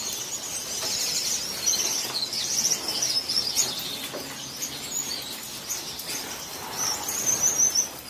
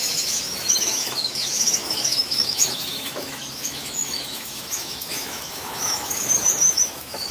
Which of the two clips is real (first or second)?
first